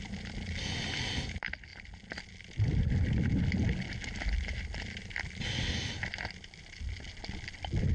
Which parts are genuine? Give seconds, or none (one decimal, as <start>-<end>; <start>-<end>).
0.0-7.9